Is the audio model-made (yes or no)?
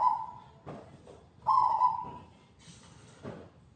yes